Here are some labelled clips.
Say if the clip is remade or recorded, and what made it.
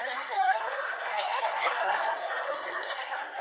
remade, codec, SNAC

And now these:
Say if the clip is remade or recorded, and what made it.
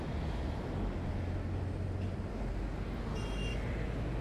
recorded